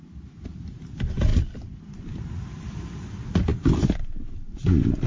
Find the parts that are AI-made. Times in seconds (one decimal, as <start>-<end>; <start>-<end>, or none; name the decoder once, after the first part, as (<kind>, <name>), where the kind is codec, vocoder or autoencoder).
none